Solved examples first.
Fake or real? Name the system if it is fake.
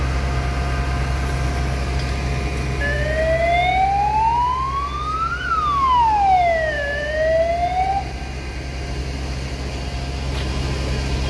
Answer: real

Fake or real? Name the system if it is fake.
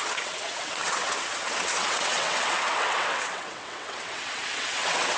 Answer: fake, vocoder, WaveNeXt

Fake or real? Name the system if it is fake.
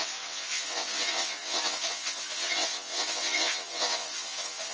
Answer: fake, vocoder, WaveNeXt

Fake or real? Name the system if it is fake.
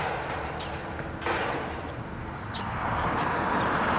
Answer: real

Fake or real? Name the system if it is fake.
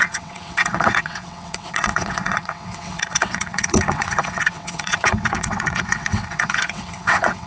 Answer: fake, vocoder, WaveNeXt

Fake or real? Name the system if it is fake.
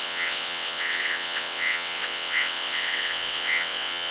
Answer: fake, vocoder, WaveNeXt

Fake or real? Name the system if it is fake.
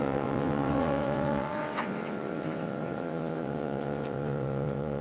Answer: fake, vocoder, WaveNeXt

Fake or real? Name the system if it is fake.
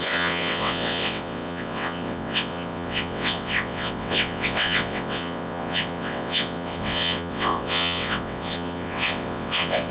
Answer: fake, vocoder, WaveNeXt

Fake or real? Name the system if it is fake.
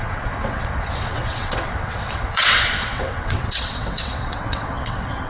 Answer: fake, vocoder, WaveNeXt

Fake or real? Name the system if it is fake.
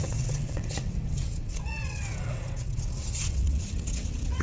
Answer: fake, vocoder, WaveNeXt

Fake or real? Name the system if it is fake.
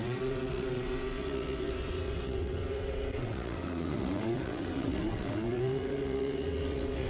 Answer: fake, vocoder, WaveNeXt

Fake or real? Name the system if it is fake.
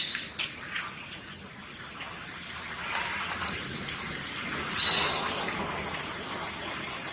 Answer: real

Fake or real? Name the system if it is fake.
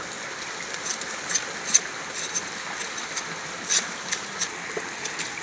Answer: real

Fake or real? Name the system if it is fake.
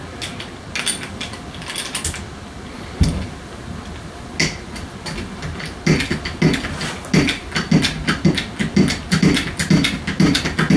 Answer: real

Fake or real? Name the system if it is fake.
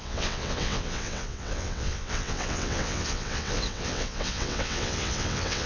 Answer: fake, vocoder, WaveNeXt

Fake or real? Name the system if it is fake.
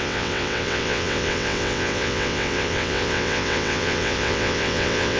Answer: fake, vocoder, WaveNeXt